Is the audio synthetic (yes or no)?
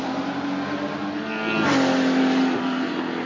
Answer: no